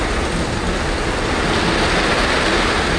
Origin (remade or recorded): recorded